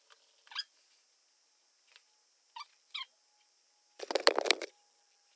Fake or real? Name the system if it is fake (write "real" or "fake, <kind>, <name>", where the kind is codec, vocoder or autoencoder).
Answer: real